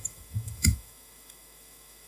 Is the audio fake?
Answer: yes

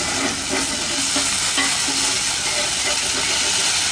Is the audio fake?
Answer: no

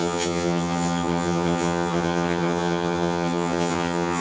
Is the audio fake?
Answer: yes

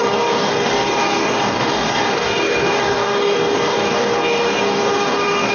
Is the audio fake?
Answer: yes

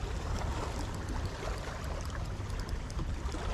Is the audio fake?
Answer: no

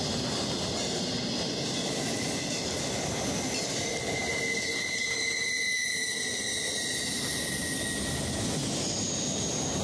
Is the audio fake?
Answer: no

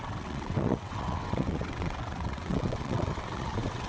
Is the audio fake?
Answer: yes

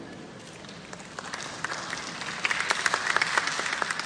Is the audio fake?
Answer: no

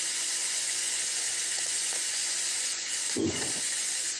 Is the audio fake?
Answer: yes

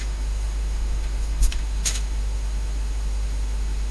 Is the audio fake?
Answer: yes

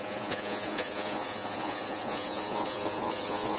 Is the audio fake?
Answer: yes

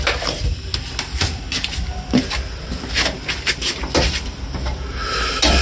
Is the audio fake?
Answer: no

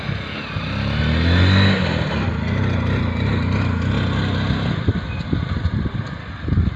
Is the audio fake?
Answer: no